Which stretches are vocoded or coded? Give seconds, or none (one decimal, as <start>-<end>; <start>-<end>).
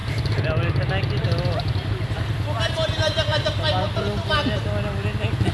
none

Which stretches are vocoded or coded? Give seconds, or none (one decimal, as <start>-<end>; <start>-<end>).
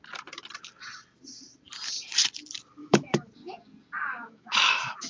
2.8-3.3; 4.1-5.1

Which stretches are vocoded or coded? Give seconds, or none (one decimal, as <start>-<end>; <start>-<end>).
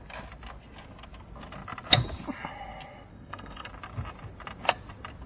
3.1-3.7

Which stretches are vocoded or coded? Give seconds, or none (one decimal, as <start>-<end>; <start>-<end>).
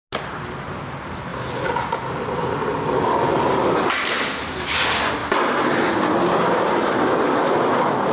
none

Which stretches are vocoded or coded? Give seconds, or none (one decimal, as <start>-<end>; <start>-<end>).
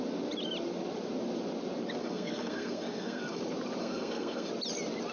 2.0-3.4; 3.8-4.5